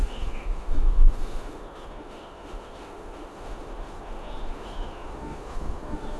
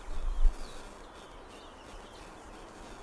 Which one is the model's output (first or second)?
first